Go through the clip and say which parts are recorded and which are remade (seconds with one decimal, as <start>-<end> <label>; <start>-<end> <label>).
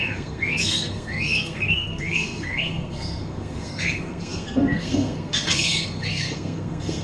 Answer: 0.0-7.0 remade